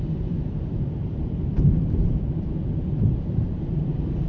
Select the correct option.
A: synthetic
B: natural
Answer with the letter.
A